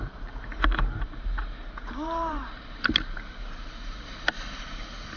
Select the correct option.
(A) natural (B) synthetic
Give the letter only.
B